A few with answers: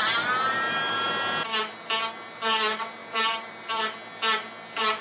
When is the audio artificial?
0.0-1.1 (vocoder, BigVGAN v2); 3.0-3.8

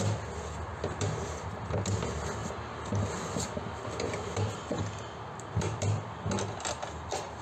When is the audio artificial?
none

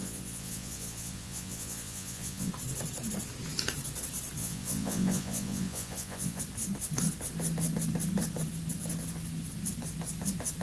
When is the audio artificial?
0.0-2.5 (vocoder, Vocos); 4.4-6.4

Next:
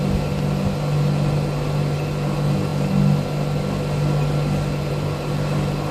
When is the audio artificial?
none

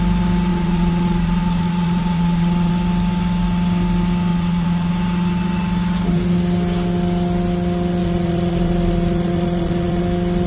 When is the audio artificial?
0.5-2.7 (vocoder, Vocos); 4.3-4.9; 8.0-10.0

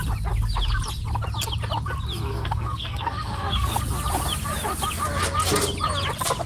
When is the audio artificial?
2.3-3.8 (codec, SNAC)